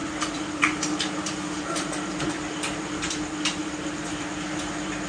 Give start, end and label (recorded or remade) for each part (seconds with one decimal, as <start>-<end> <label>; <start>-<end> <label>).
0.0-3.1 remade; 3.1-3.6 recorded; 3.6-4.6 remade; 4.6-5.1 recorded